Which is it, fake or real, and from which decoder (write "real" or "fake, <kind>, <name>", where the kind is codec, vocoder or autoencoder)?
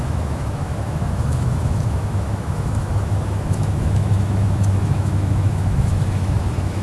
fake, autoencoder, DAC-VAE